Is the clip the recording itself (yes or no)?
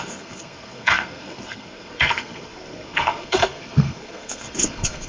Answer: no